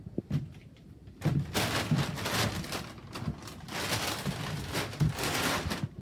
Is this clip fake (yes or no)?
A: no